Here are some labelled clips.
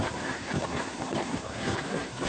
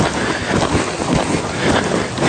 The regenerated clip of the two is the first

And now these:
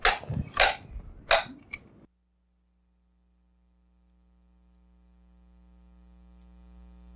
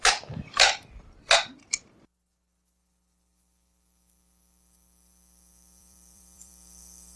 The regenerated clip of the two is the second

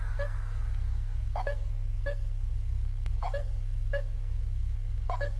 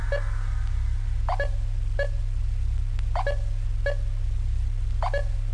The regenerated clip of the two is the first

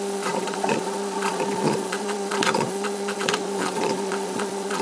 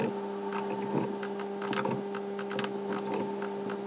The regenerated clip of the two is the first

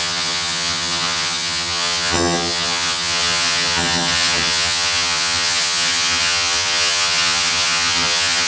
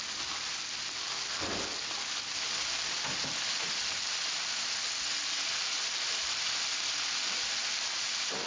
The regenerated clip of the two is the first